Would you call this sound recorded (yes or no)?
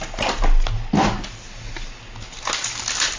yes